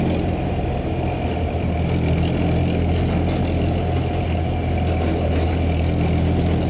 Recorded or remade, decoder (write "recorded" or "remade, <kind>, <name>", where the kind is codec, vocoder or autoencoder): recorded